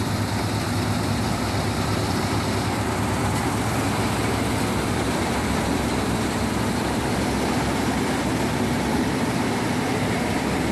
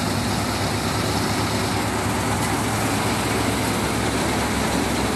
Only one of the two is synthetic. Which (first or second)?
first